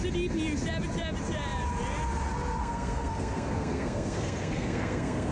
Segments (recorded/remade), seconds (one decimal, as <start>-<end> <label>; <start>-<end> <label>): 0.0-2.6 recorded; 2.6-5.3 remade